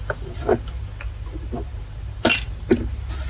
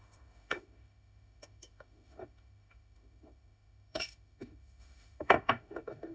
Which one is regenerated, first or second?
second